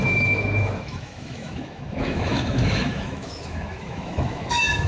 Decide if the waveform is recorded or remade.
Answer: remade